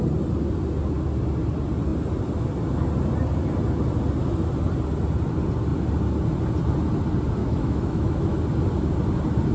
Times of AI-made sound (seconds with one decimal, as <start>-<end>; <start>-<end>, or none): 7.4-8.4

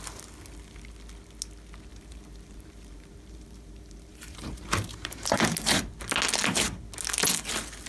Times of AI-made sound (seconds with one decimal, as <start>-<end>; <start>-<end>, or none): 1.9-5.9

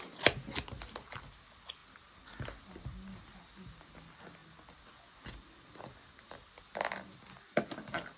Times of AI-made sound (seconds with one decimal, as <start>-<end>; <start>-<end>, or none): none

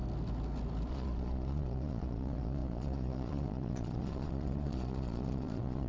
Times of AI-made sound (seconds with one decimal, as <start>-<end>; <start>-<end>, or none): 0.9-5.9

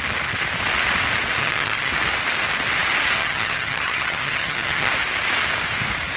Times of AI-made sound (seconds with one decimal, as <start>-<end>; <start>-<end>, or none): 1.4-1.9; 3.2-4.9